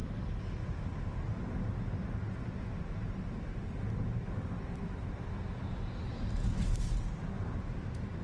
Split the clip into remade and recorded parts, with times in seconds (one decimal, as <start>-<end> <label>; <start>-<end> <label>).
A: 0.0-8.2 recorded